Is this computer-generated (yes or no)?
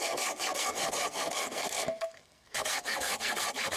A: yes